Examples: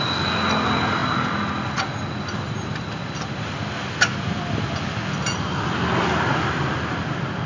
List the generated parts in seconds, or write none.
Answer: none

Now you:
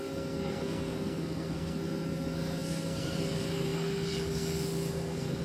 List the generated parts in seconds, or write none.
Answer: 0.0-5.4 (codec, SNAC)